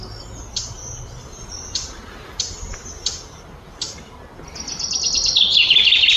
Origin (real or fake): real